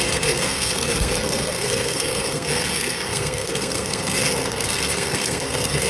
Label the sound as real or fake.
fake